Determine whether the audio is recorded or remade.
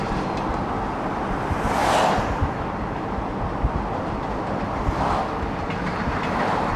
recorded